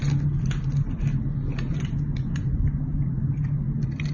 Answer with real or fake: real